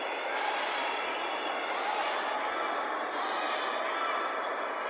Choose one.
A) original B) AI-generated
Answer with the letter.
A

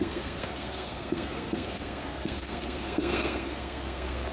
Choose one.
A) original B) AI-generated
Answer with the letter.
B